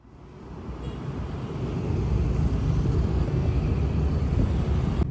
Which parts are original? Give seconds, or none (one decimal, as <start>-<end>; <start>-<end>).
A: 0.0-3.1; 3.6-5.1